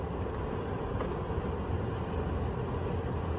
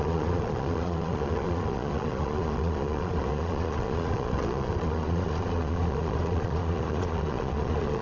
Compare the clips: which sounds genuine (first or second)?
first